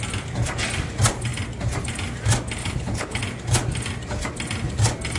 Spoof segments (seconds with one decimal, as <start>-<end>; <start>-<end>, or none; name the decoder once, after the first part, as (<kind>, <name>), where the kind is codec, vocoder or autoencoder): 2.6-3.2 (codec, HILCodec)